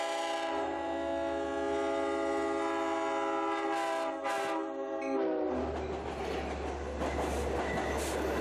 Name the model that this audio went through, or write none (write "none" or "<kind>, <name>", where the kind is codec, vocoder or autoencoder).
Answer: none